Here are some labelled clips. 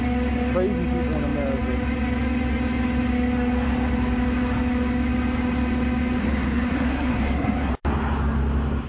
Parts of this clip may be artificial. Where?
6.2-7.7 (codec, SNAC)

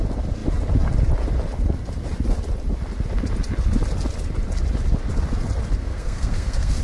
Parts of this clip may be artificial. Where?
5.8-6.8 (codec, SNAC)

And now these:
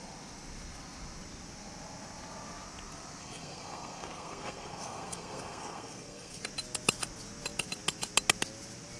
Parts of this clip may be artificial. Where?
3.2-6.4 (codec, SNAC)

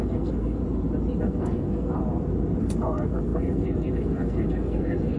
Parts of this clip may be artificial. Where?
0.0-0.6 (codec, SNAC); 1.2-2.0; 2.6-5.2

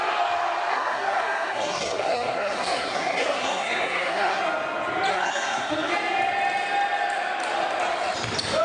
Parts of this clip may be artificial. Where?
0.7-4.4 (codec, SNAC); 5.1-5.9

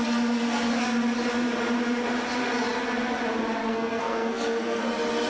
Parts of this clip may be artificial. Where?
3.6-4.8 (codec, SNAC)